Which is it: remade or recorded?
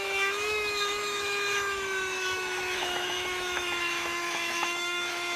remade